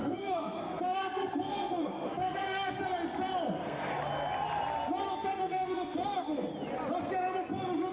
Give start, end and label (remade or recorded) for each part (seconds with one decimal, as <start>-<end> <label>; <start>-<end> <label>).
0.0-2.8 remade; 2.8-3.5 recorded; 3.5-3.9 remade; 3.9-5.1 recorded; 5.1-6.5 remade; 6.5-7.9 recorded